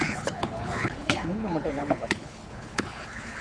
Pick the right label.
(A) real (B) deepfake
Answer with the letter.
B